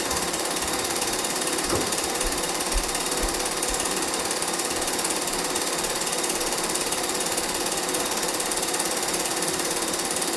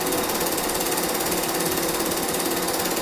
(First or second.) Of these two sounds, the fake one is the first